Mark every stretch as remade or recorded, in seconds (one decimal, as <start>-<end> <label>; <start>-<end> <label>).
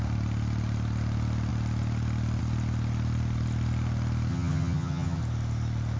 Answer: 0.0-4.3 recorded; 4.3-5.2 remade; 5.2-6.0 recorded